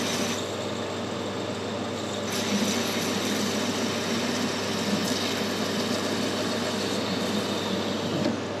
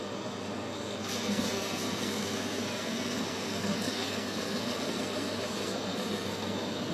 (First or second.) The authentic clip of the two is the first